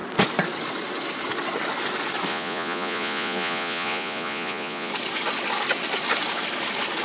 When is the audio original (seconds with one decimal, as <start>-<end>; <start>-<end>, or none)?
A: 0.0-2.3; 4.9-7.0